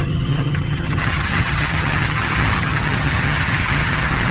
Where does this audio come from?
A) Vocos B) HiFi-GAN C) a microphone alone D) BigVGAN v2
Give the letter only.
B